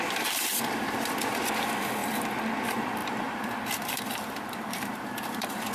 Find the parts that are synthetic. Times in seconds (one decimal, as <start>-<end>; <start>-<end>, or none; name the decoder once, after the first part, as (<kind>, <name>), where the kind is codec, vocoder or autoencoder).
3.0-5.7 (vocoder, BigVGAN v2)